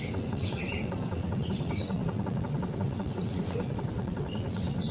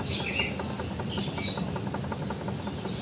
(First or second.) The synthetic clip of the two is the first